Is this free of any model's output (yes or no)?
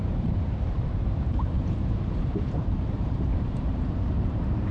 no